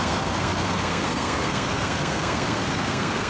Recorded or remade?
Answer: remade